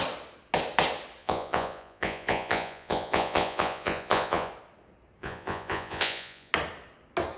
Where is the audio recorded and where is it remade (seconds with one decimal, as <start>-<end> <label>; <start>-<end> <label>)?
0.0-1.2 recorded; 1.2-4.5 remade; 4.5-5.2 recorded; 5.2-6.5 remade; 6.5-7.4 recorded